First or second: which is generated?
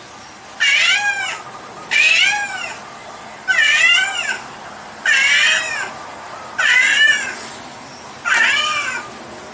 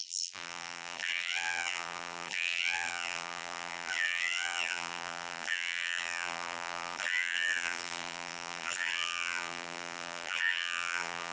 second